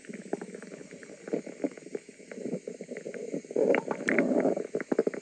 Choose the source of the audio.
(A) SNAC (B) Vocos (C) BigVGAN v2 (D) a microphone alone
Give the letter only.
D